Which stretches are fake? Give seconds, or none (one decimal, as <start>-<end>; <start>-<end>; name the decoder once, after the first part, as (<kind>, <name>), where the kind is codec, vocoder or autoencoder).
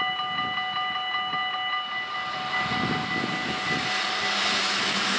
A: none